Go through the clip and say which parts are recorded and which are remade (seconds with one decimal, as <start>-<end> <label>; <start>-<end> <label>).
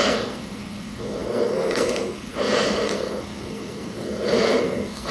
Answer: 0.0-5.1 remade